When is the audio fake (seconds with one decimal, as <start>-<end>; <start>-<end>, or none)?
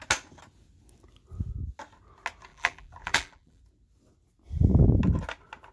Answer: 2.5-3.6